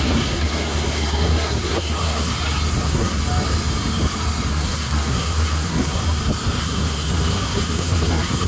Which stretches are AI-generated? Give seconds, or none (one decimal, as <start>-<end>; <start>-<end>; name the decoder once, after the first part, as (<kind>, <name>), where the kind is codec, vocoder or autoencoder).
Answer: 0.0-2.3 (codec, SNAC); 2.8-3.2; 4.5-6.0; 6.6-8.5